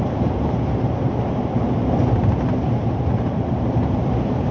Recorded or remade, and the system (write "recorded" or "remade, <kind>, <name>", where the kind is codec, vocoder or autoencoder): remade, vocoder, BigVGAN v2